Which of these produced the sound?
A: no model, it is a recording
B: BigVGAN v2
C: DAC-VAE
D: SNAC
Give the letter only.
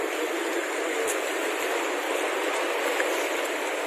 A